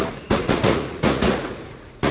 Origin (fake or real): fake